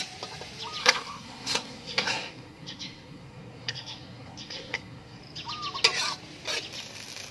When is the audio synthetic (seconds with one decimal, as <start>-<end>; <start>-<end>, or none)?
0.8-5.2